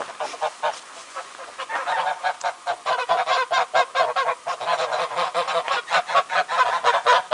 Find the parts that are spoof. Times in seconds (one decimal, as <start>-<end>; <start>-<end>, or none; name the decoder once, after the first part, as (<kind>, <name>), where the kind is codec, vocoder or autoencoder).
1.0-3.1 (vocoder, Vocos); 4.7-5.8